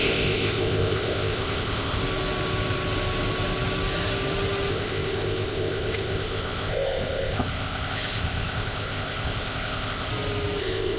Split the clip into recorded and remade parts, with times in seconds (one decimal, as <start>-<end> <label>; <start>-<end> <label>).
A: 0.0-2.0 remade; 2.0-4.7 recorded; 4.7-10.1 remade; 10.1-10.6 recorded; 10.6-11.0 remade